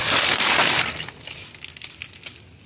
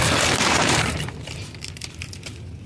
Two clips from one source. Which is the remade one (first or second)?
second